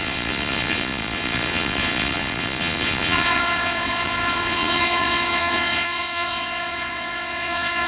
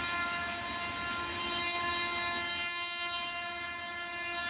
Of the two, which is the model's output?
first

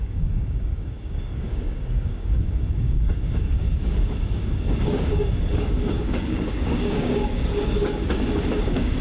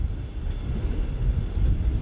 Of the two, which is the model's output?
first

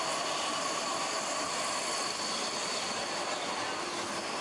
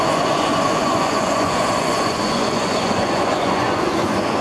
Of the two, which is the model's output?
second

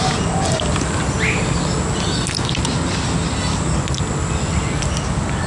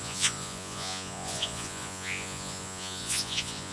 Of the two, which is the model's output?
second